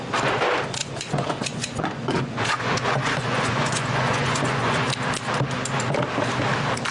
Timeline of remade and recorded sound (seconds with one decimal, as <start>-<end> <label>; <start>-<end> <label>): 0.0-0.8 recorded; 0.8-4.9 remade; 4.9-6.9 recorded